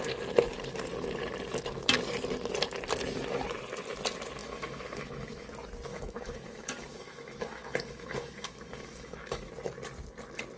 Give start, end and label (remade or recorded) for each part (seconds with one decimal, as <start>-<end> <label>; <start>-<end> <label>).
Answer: 0.0-4.4 recorded; 4.4-5.5 remade; 5.5-5.9 recorded; 5.9-9.5 remade; 9.5-10.6 recorded